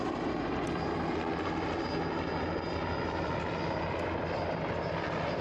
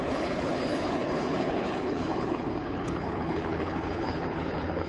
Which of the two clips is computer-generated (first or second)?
second